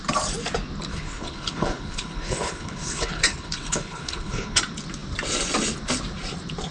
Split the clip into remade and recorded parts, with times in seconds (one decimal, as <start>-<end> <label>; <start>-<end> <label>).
0.0-0.9 recorded; 0.9-4.6 remade; 4.6-6.7 recorded